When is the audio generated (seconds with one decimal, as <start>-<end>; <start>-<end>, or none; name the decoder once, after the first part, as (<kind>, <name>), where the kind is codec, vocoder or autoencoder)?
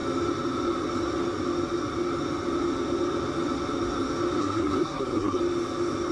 4.4-5.4 (codec, SNAC)